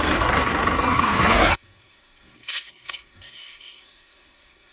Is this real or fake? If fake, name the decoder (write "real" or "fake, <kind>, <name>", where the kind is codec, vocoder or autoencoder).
fake, codec, SNAC